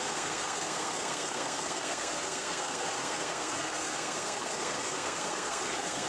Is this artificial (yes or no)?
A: yes